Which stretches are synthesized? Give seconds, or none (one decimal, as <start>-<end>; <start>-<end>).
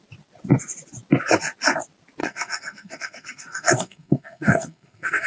2.2-5.3